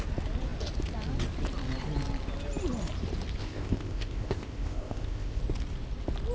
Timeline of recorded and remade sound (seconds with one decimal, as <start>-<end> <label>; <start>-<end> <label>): 0.0-3.4 recorded; 3.4-5.4 remade; 5.4-6.3 recorded